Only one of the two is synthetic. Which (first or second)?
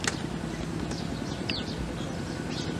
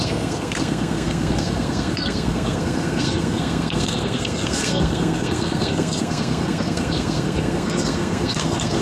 second